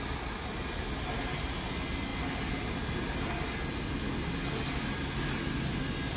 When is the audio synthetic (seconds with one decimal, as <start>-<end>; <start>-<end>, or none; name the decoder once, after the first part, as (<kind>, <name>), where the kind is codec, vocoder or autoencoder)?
none